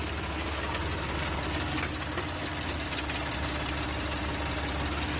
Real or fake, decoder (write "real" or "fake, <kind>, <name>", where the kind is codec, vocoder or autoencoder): real